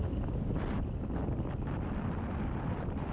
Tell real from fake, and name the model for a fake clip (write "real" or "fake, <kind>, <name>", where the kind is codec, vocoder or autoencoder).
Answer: fake, vocoder, BigVGAN v2